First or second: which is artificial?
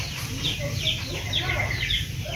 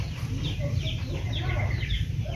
second